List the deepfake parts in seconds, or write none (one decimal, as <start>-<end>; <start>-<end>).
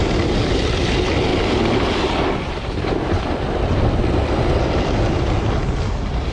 none